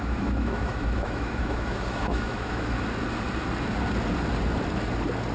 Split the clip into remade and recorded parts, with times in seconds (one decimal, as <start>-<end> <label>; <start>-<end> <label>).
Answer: 0.0-2.8 remade; 2.8-5.3 recorded